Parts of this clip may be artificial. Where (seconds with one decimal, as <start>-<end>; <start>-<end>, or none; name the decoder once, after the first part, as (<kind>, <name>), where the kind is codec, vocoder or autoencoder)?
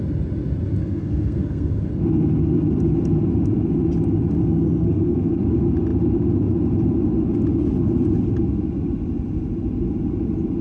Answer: 0.8-1.9 (codec, SNAC); 4.4-5.3